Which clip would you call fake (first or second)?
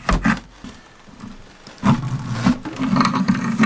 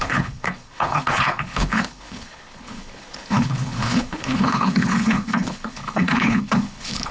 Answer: second